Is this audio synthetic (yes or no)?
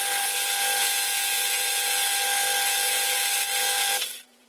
yes